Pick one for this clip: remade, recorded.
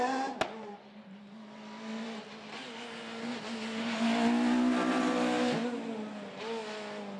recorded